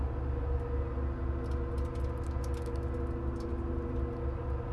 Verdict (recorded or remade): recorded